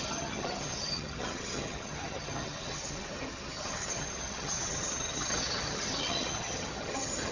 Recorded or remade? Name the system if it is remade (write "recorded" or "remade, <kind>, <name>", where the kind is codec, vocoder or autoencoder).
remade, vocoder, HiFi-GAN